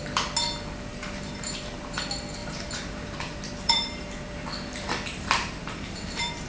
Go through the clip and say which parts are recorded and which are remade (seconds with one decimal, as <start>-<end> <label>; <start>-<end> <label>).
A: 0.0-0.9 recorded; 0.9-2.0 remade; 2.0-2.4 recorded; 2.4-6.5 remade

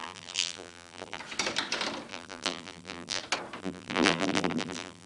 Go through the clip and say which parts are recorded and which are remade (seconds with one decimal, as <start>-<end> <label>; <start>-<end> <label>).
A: 0.0-1.2 remade; 1.2-2.1 recorded; 2.1-3.2 remade; 3.2-3.6 recorded; 3.6-5.1 remade

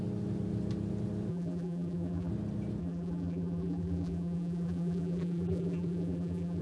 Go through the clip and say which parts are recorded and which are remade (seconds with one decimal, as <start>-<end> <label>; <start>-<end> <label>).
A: 0.0-1.3 recorded; 1.3-2.3 remade; 2.3-2.8 recorded; 2.8-6.6 remade

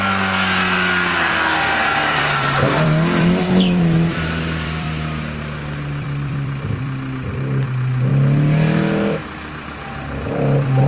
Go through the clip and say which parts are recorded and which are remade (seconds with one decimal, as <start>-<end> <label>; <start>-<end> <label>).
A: 0.0-2.0 recorded; 2.0-7.3 remade; 7.3-10.9 recorded

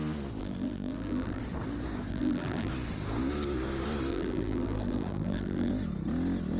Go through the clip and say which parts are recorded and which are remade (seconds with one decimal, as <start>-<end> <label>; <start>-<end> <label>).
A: 0.0-0.4 recorded; 0.4-1.4 remade; 1.4-2.1 recorded; 2.1-2.7 remade; 2.7-4.1 recorded; 4.1-5.7 remade; 5.7-6.6 recorded